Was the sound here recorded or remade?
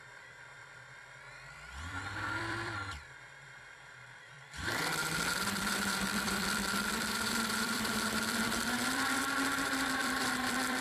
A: remade